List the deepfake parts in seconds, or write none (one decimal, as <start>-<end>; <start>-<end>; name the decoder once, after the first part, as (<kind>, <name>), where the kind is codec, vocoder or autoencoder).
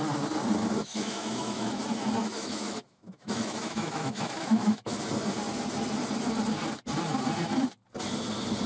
0.8-1.8 (autoencoder, DAC-VAE); 2.2-5.0